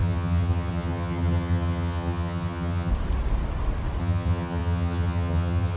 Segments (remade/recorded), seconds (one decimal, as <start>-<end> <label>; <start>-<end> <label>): 0.0-2.9 remade; 2.9-4.0 recorded; 4.0-5.8 remade